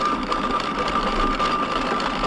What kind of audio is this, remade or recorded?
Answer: recorded